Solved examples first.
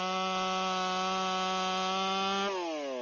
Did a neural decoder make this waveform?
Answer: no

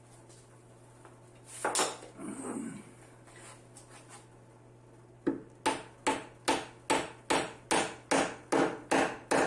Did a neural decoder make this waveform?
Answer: no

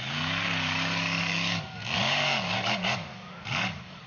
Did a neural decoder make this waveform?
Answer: yes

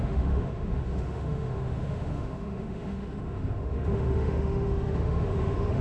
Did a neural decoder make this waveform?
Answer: yes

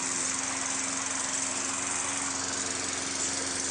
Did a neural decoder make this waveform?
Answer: no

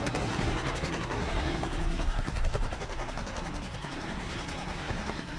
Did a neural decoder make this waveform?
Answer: yes